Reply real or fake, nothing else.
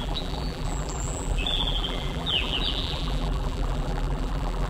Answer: fake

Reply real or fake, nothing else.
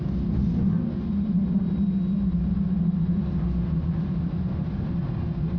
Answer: real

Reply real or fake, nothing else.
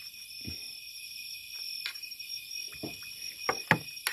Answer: real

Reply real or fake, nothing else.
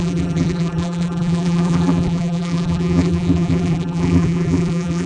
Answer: fake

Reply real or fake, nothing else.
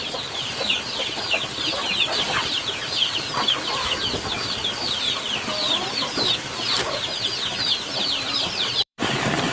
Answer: fake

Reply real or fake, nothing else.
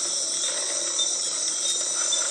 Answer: fake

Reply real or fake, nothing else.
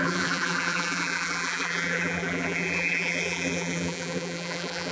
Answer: fake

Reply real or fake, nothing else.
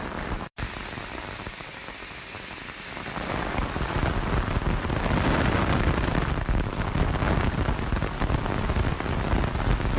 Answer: fake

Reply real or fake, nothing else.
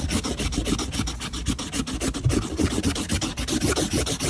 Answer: real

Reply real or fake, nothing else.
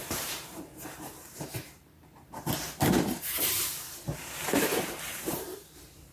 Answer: fake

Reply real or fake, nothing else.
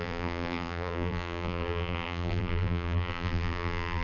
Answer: fake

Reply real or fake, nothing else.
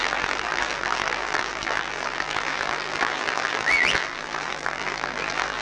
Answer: fake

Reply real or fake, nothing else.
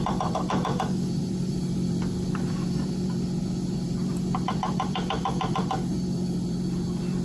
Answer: fake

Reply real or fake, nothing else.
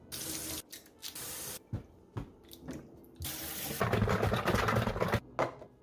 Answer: real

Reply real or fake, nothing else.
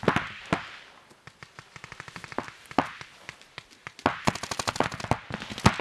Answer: real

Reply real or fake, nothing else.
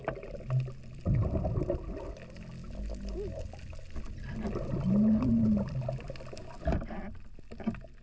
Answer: real